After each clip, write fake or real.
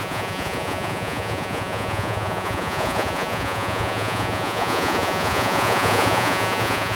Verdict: fake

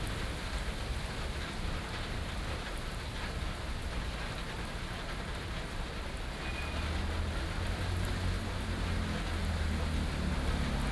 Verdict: real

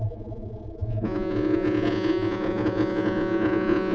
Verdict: fake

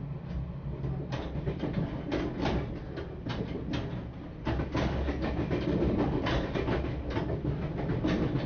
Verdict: real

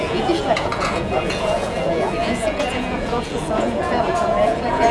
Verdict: fake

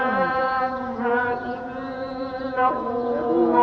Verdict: fake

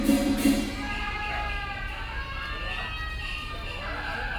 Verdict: real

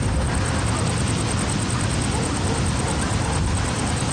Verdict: real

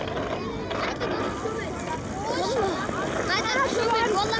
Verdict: real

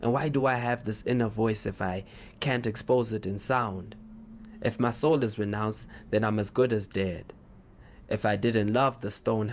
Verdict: fake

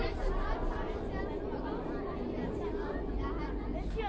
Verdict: real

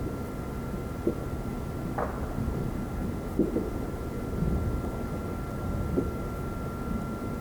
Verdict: real